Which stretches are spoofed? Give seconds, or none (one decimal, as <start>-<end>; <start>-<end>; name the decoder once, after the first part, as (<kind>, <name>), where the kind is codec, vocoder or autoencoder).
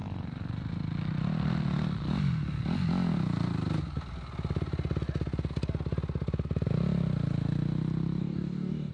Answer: 8.2-8.9 (codec, DAC)